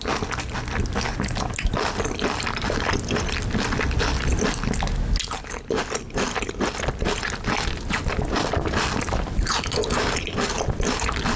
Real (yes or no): yes